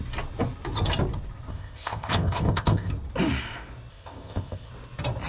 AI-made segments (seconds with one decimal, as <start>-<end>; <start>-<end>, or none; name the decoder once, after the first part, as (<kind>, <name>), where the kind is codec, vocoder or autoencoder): 1.5-2.9 (codec, ZipCodec); 3.9-4.7